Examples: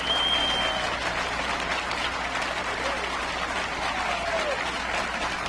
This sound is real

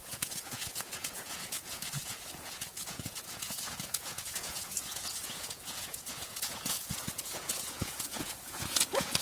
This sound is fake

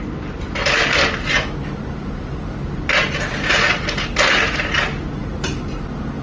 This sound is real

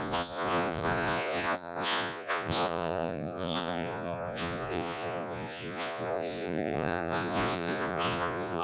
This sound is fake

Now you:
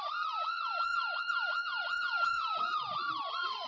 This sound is fake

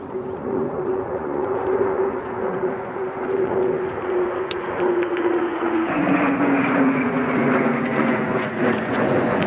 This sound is fake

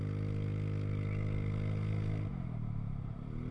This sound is real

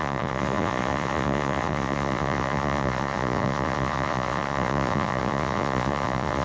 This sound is fake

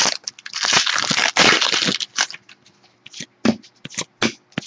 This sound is real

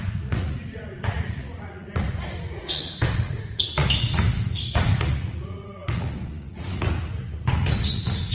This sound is fake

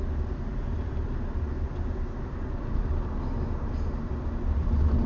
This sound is real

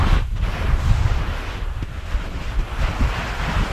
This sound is real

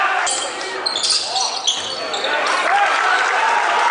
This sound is real